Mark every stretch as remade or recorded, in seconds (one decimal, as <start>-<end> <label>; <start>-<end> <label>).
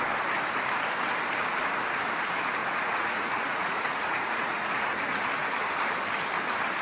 0.0-2.6 recorded; 2.6-5.2 remade; 5.2-6.8 recorded